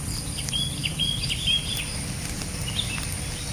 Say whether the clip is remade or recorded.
recorded